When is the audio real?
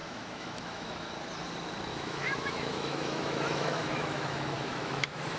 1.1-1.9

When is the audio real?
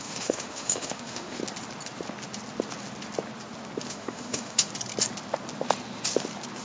1.4-3.9; 4.7-6.6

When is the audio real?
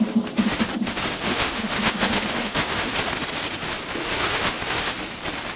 0.0-1.3; 2.9-4.0; 4.9-5.6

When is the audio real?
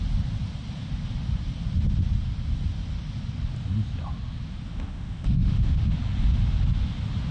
0.0-4.7; 5.9-7.3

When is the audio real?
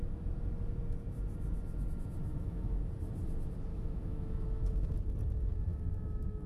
0.0-2.3; 2.9-3.7; 4.7-5.7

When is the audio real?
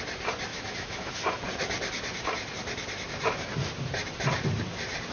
0.0-0.5; 1.1-5.1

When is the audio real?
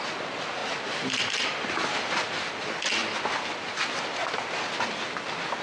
0.0-5.6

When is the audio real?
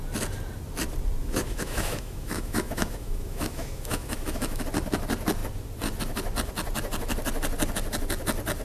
0.0-1.2; 4.6-8.6